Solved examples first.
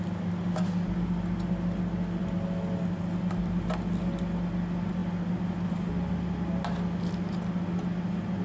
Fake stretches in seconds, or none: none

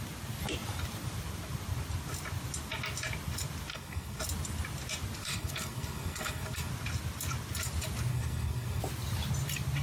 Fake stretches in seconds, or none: 3.7-4.2; 5.2-6.7; 8.1-8.8

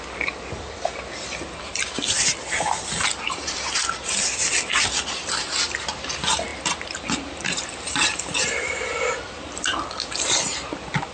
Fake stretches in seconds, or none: none

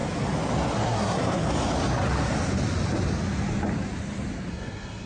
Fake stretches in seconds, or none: 0.8-1.4; 4.5-5.1

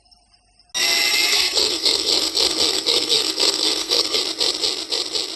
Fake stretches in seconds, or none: 1.3-4.2

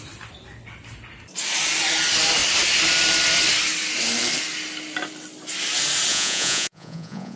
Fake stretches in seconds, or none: 6.1-7.4

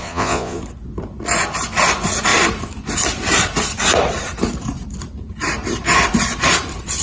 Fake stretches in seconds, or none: 0.0-0.6